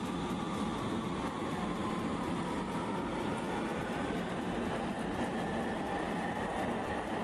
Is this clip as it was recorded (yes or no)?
yes